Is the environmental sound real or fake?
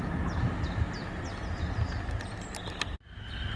real